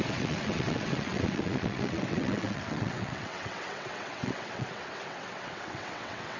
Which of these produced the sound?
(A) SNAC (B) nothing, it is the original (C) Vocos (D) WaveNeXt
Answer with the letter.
D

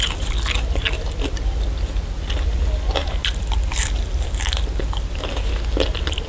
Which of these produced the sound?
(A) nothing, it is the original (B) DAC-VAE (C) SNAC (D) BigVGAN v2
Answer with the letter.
A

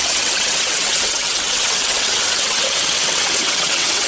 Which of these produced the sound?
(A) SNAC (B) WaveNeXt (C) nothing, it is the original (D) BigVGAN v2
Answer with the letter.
B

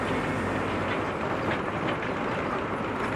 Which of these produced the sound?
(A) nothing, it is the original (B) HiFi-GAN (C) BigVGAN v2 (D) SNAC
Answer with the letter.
A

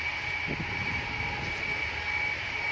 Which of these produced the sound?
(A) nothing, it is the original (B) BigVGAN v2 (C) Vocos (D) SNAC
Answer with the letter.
A